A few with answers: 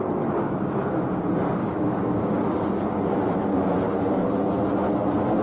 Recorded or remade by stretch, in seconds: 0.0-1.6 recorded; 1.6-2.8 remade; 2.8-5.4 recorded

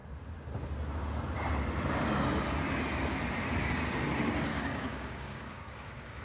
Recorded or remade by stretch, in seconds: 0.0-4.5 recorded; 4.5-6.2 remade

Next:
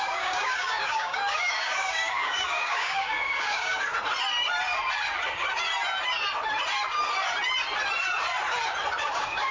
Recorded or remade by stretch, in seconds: 0.0-3.9 remade; 3.9-9.0 recorded; 9.0-9.5 remade

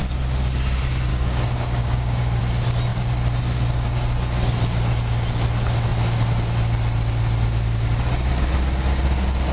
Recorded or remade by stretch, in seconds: 0.0-1.1 recorded; 1.1-2.4 remade; 2.4-9.5 recorded

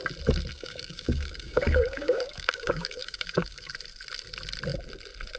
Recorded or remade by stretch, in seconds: 0.0-0.5 recorded; 0.5-3.7 remade; 3.7-5.4 recorded

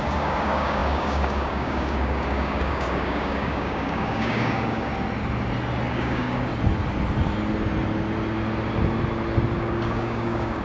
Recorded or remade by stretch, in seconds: 0.0-4.9 remade; 4.9-5.9 recorded; 5.9-6.5 remade; 6.5-9.6 recorded; 9.6-10.6 remade

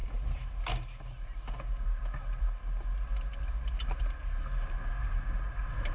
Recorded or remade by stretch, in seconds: 0.0-5.9 recorded